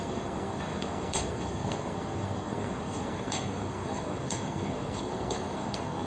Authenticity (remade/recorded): remade